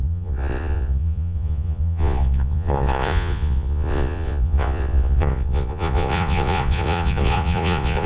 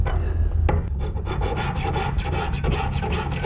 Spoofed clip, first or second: first